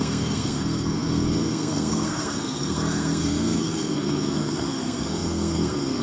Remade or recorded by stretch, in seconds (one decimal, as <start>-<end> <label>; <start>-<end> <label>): 0.0-6.0 remade